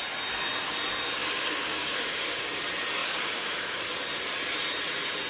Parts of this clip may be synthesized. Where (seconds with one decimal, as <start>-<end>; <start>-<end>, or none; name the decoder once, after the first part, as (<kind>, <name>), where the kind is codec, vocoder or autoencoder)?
1.2-2.6 (codec, DAC); 3.0-3.8